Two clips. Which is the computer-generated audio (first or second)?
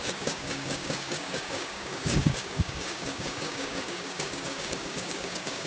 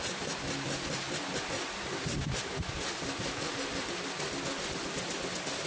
first